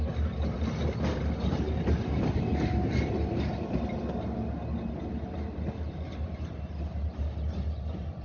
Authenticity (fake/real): real